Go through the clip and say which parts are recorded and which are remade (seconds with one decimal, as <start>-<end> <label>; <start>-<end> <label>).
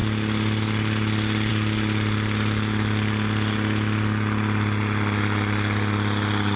0.0-6.6 recorded